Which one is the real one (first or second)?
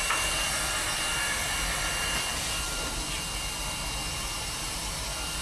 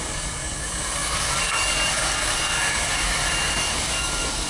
first